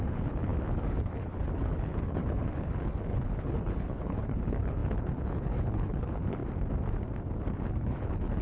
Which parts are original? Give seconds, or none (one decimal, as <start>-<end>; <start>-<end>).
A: 6.4-7.7